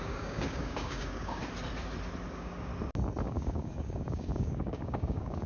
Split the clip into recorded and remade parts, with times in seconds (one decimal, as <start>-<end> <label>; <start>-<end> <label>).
0.0-1.4 remade; 1.4-2.3 recorded; 2.3-2.7 remade; 2.7-3.2 recorded; 3.2-5.5 remade